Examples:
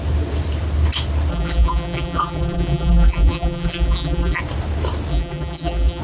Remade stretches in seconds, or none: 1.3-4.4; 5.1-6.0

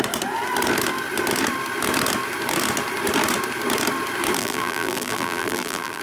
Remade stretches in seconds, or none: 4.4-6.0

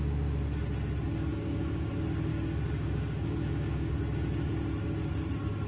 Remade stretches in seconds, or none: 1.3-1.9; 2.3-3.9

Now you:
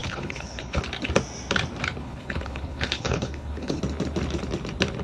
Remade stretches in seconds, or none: 0.0-0.8; 2.0-3.8

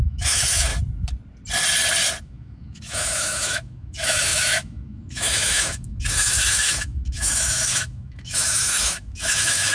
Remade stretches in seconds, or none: 0.0-0.7; 2.2-9.7

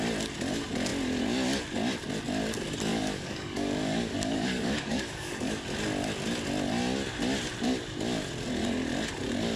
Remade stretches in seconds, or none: 2.9-5.5